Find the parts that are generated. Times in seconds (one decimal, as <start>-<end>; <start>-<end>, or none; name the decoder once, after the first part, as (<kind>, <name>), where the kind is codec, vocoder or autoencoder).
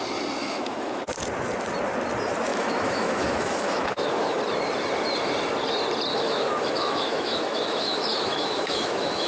0.4-1.0 (autoencoder, DAC-VAE); 2.5-4.4; 6.1-9.3